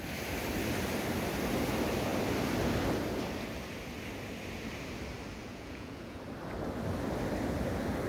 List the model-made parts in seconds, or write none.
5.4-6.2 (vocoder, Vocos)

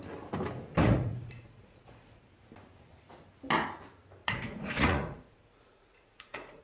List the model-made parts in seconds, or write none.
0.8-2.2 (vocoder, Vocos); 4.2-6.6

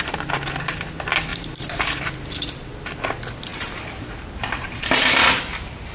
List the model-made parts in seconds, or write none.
1.3-2.0 (vocoder, BigVGAN v2); 3.5-5.4